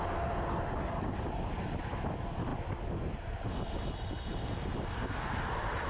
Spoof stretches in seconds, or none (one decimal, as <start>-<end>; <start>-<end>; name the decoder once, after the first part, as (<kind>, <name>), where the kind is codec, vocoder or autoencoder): none